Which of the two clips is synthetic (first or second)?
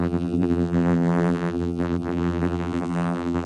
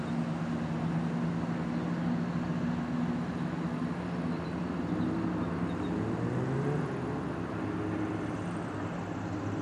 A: first